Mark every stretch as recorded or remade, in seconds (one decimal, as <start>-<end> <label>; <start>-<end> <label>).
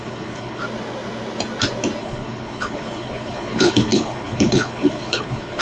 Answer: 0.0-0.6 remade; 0.6-2.0 recorded; 2.0-5.6 remade